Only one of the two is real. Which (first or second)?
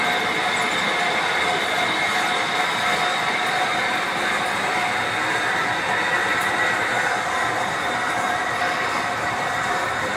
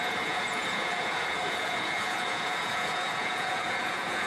first